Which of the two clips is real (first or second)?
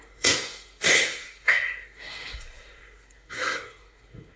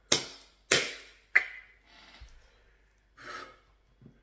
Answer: second